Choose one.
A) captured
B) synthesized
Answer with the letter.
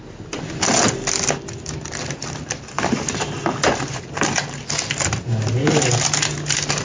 A